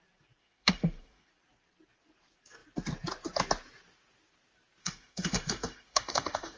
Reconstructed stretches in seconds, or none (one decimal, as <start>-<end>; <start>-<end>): 0.4-1.3; 4.8-6.6